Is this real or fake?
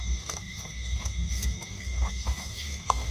fake